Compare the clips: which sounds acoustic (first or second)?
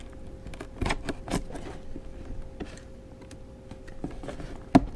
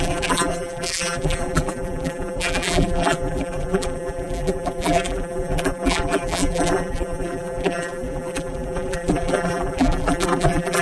first